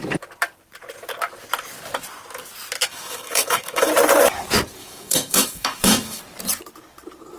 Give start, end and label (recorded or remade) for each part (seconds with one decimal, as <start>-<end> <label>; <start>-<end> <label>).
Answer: 0.0-2.9 recorded; 2.9-3.9 remade; 3.9-4.8 recorded; 4.8-6.2 remade; 6.2-7.4 recorded